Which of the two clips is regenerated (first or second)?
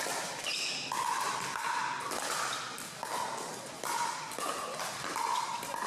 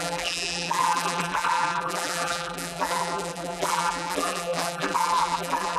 second